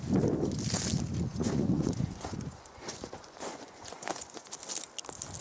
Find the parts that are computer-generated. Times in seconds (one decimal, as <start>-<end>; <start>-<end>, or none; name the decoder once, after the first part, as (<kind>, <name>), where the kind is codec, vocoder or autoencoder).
1.3-4.5 (vocoder, Vocos)